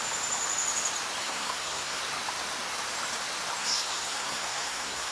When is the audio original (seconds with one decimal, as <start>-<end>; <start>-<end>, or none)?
0.0-1.2; 2.0-3.6